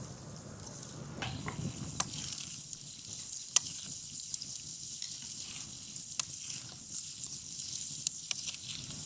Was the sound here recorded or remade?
recorded